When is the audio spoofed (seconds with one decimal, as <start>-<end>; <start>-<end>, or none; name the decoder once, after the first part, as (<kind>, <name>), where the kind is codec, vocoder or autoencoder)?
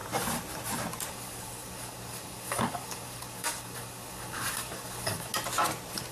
1.1-5.3 (codec, DAC)